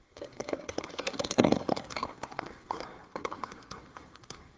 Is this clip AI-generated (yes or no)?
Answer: yes